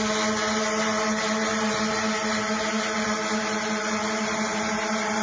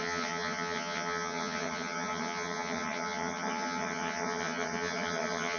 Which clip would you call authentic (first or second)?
first